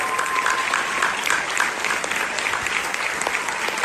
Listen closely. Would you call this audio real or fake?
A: real